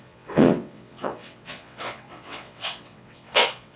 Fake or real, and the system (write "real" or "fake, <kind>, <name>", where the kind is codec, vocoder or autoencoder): fake, vocoder, WaveNeXt